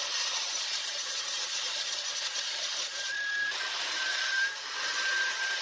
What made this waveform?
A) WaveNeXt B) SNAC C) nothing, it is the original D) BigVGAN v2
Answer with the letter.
C